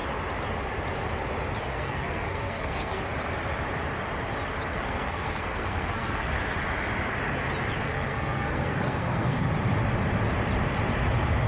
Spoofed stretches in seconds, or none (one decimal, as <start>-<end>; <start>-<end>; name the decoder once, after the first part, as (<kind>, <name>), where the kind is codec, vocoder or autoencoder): 1.7-3.0 (codec, SNAC); 4.7-6.3; 7.8-9.5